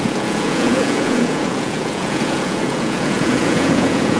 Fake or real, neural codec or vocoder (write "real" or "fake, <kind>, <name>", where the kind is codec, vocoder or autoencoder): fake, vocoder, Vocos